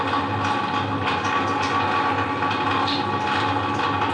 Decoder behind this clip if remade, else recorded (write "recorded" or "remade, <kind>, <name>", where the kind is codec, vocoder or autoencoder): recorded